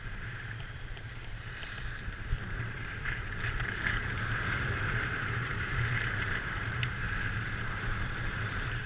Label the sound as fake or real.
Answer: fake